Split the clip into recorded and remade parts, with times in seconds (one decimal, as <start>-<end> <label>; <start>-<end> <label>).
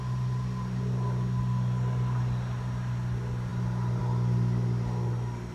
0.0-5.5 recorded